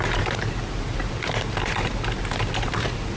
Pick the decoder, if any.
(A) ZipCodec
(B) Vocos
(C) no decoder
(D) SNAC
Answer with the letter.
C